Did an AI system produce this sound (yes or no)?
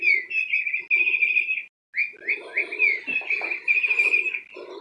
no